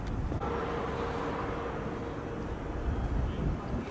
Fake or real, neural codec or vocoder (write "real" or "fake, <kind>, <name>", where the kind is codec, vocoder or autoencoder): real